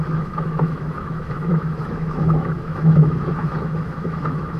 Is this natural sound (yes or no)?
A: no